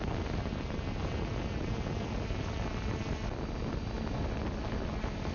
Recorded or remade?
recorded